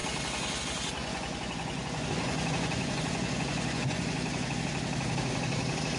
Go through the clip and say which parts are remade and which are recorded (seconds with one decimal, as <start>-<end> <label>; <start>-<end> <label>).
0.0-1.0 recorded; 1.0-4.6 remade; 4.6-6.0 recorded

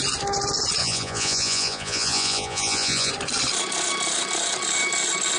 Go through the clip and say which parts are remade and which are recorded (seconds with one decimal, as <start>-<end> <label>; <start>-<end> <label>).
0.0-0.8 recorded; 0.8-3.1 remade; 3.1-5.4 recorded

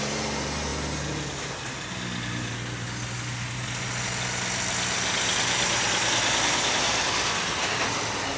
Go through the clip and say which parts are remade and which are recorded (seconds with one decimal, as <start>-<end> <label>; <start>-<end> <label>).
0.0-8.4 recorded

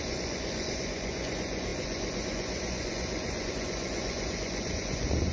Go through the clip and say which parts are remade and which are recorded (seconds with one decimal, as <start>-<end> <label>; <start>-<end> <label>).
0.0-5.3 remade